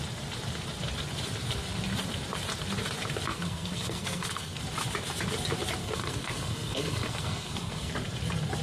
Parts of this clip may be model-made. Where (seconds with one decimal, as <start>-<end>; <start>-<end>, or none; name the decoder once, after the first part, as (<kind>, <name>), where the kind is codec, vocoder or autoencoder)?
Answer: 3.3-4.6 (codec, SNAC); 5.8-7.9